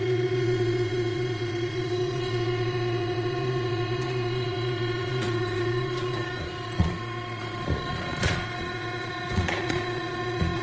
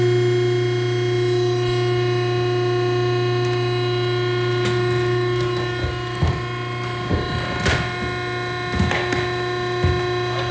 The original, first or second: second